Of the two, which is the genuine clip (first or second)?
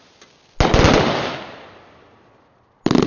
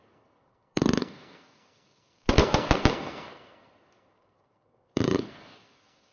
first